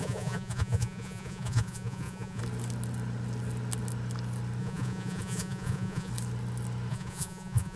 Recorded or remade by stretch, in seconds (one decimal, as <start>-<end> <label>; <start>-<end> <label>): 0.0-2.4 remade; 2.4-4.6 recorded; 4.6-6.1 remade; 6.1-6.9 recorded; 6.9-7.8 remade